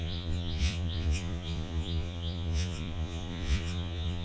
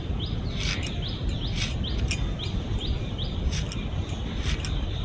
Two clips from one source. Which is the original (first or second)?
second